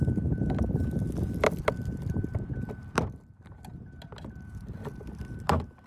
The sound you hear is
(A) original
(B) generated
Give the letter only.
B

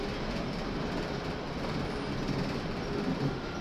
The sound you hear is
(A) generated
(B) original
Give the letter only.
B